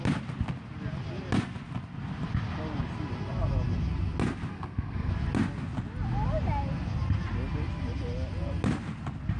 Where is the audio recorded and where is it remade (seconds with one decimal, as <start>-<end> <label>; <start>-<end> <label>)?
0.0-4.5 recorded; 4.5-5.1 remade; 5.1-9.4 recorded